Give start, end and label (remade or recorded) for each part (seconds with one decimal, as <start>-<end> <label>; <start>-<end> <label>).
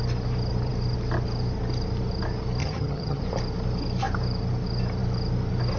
0.0-2.6 recorded; 2.6-3.2 remade; 3.2-5.8 recorded